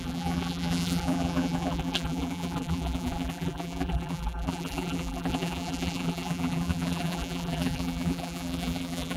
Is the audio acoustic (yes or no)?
no